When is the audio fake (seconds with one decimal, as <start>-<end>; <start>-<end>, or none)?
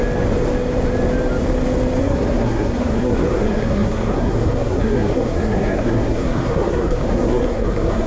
2.0-8.1